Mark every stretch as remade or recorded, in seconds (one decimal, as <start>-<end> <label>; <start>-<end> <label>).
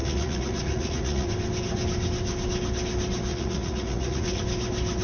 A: 0.0-1.3 remade; 1.3-3.3 recorded; 3.3-4.4 remade; 4.4-5.0 recorded